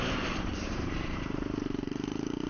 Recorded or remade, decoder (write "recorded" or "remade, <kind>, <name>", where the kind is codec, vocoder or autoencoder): remade, vocoder, BigVGAN v2